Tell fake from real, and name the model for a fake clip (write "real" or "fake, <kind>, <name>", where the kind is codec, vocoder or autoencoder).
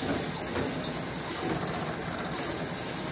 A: real